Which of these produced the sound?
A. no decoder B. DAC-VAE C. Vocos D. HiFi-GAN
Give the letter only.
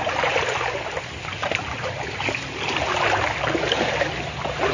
A